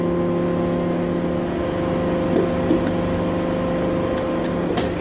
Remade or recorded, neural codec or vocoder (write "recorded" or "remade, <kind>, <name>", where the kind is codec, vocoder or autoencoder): recorded